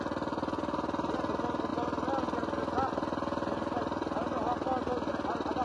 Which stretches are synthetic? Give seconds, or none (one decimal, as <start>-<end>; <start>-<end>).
none